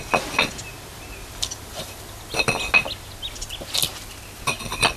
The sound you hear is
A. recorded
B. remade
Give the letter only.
A